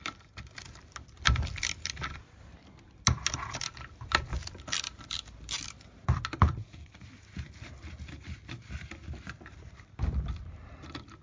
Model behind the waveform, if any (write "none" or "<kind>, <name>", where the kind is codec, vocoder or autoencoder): none